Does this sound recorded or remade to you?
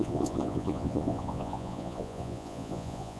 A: remade